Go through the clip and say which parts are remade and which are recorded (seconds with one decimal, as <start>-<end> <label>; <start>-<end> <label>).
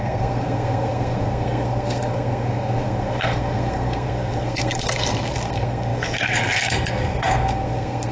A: 0.0-8.1 remade